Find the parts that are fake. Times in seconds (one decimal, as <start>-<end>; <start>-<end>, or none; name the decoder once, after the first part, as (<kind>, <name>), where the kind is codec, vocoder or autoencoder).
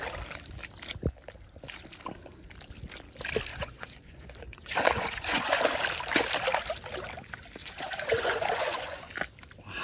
3.5-5.6 (vocoder, Vocos); 7.6-9.1